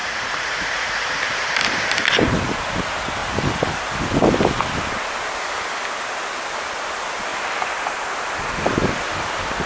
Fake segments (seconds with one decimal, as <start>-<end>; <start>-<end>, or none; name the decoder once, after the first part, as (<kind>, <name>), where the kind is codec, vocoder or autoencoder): 0.0-1.2 (vocoder, Vocos)

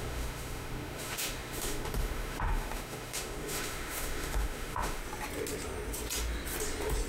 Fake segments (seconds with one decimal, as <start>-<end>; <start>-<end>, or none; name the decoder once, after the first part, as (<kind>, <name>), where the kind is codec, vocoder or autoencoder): 0.0-5.0 (autoencoder, DAC-VAE)

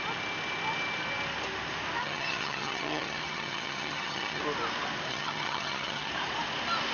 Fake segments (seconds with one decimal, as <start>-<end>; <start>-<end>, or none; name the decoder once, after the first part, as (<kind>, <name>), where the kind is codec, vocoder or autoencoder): 2.0-4.4 (vocoder, HiFi-GAN); 5.1-6.1

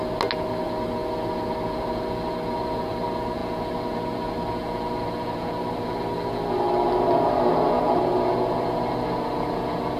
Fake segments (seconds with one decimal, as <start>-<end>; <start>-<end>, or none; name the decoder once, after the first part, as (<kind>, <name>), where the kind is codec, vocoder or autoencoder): none

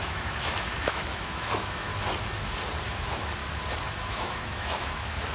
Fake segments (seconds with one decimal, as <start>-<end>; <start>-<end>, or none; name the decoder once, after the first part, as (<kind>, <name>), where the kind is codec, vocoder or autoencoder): 0.0-1.9 (autoencoder, DAC-VAE); 2.9-3.4; 4.1-5.3

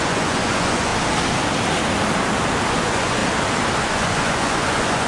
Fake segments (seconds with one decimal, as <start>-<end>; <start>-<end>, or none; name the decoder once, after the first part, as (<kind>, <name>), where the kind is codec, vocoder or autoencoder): 0.0-0.9 (vocoder, Vocos); 2.7-3.2; 3.8-5.1